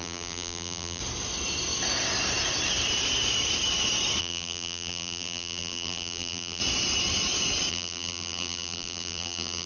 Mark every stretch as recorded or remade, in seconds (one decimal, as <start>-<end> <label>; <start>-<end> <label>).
0.0-1.0 remade; 1.0-4.2 recorded; 4.2-6.6 remade; 6.6-7.7 recorded; 7.7-9.7 remade